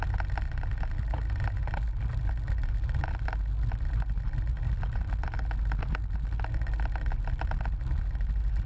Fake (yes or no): no